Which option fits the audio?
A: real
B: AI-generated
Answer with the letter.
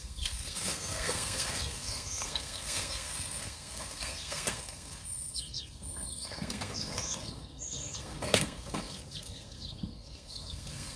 B